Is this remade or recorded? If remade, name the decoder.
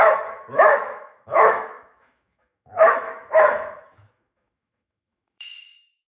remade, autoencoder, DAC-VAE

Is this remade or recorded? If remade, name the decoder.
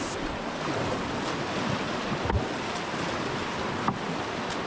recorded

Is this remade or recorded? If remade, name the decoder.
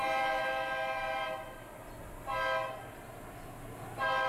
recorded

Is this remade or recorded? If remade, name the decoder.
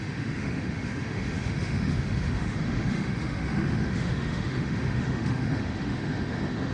remade, autoencoder, DAC-VAE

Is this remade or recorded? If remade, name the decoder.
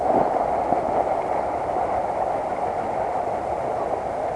recorded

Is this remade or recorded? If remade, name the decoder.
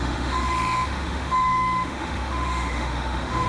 remade, autoencoder, DAC-VAE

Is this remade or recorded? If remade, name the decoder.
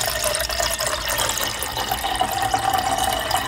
recorded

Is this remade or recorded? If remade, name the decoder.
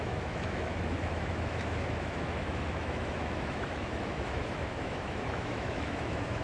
remade, autoencoder, DAC-VAE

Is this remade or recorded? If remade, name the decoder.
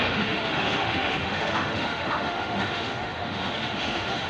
remade, autoencoder, DAC-VAE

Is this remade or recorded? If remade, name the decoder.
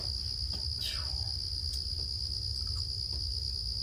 recorded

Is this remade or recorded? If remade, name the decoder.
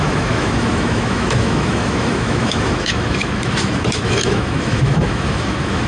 remade, autoencoder, DAC-VAE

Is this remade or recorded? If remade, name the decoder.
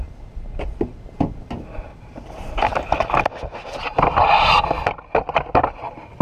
recorded